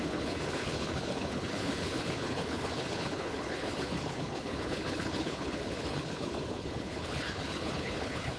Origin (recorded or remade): remade